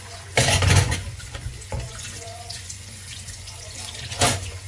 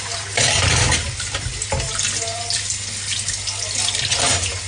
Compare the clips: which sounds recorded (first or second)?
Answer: second